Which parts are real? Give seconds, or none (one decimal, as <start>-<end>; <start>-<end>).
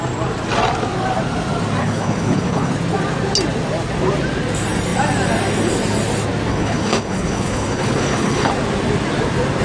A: 0.0-1.8; 2.7-6.5; 8.5-9.6